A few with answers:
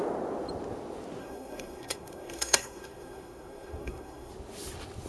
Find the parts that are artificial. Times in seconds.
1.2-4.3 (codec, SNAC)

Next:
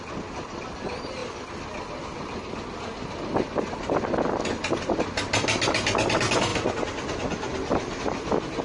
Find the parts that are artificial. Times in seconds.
none

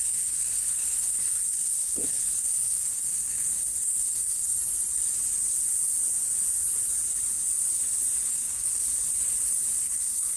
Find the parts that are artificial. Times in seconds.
0.0-4.5 (codec, SNAC); 8.3-8.8; 9.8-10.4

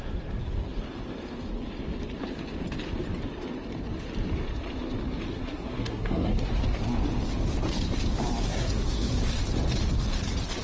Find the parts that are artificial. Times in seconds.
5.3-6.5 (codec, SNAC); 8.4-9.2

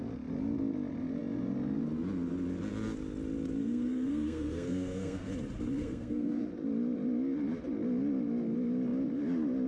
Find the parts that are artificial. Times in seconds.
3.6-5.3 (codec, SNAC); 5.8-6.4

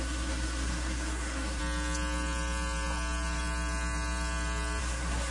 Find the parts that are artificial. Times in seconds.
0.0-1.6 (codec, SNAC); 4.8-5.3

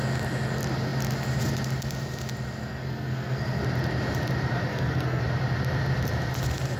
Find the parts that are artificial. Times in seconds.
2.6-3.6 (codec, SNAC); 4.7-5.2

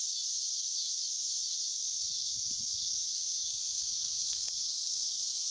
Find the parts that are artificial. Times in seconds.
2.2-5.5 (codec, SNAC)